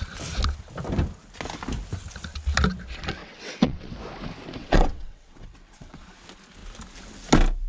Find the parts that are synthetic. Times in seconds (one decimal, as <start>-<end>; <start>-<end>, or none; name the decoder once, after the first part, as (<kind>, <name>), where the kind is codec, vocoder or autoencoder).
3.2-3.9 (vocoder, WaveNeXt); 4.6-6.0